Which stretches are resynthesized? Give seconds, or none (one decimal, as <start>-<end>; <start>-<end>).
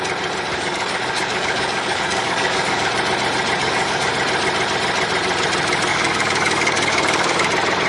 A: 0.5-2.9; 3.6-4.1; 5.9-7.5